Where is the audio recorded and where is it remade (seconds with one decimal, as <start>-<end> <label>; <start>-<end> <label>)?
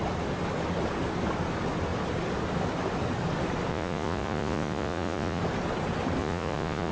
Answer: 0.0-3.7 recorded; 3.7-5.4 remade; 5.4-6.2 recorded; 6.2-6.9 remade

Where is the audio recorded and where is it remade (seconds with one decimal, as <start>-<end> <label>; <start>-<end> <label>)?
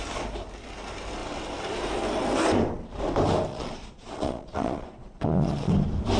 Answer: 0.0-3.5 recorded; 3.5-5.7 remade; 5.7-6.2 recorded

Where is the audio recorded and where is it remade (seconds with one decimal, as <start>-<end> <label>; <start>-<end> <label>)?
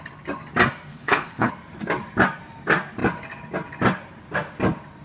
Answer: 0.0-0.9 recorded; 0.9-1.5 remade; 1.5-5.0 recorded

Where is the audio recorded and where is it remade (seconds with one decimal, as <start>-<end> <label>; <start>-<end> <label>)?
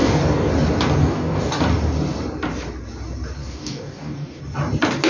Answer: 0.0-0.5 remade; 0.5-1.0 recorded; 1.0-1.6 remade; 1.6-3.4 recorded; 3.4-4.4 remade; 4.4-5.1 recorded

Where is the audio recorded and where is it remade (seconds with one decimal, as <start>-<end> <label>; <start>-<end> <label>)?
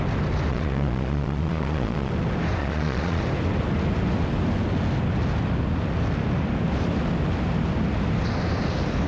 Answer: 0.0-0.5 recorded; 0.5-2.1 remade; 2.1-2.6 recorded; 2.6-3.2 remade; 3.2-9.1 recorded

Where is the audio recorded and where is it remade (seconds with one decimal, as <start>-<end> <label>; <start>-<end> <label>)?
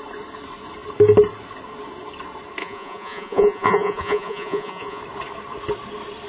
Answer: 0.0-2.6 recorded; 2.6-5.0 remade; 5.0-6.3 recorded